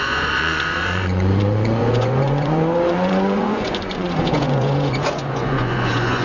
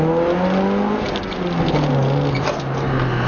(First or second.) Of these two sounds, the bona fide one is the second